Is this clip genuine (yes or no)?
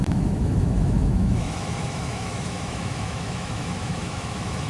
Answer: no